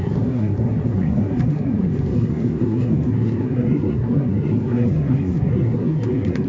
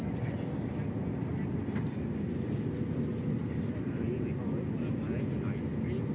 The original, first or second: second